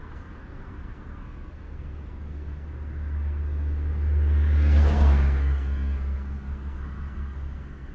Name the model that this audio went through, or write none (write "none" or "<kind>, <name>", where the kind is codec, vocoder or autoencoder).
codec, SNAC